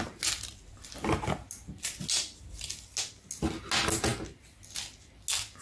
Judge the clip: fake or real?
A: real